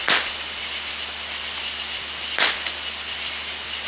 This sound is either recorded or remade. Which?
recorded